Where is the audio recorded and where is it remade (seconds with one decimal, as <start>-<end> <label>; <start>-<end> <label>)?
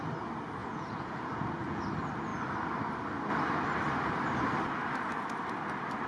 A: 0.0-0.6 recorded; 0.6-1.8 remade; 1.8-6.1 recorded